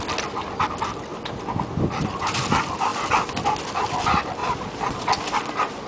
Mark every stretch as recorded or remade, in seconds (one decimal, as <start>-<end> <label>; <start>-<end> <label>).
0.0-4.4 recorded; 4.4-5.1 remade; 5.1-5.9 recorded